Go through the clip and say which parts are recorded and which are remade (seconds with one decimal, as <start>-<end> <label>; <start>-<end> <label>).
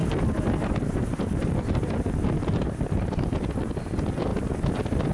0.0-5.1 recorded